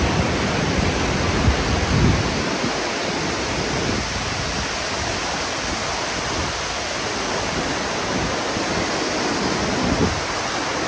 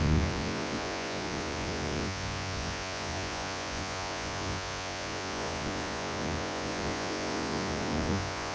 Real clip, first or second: first